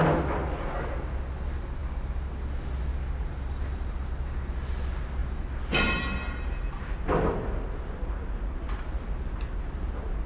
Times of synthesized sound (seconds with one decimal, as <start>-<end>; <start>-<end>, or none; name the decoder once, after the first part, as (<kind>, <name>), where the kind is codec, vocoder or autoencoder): none